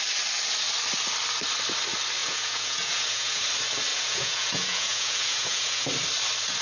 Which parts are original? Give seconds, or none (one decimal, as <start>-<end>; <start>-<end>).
0.0-2.2; 3.4-3.9; 5.9-6.6